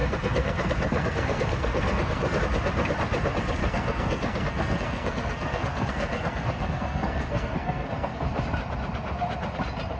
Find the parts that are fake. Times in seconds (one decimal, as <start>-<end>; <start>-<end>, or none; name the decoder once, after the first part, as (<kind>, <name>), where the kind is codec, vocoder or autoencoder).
0.0-2.4 (codec, SNAC); 3.6-8.2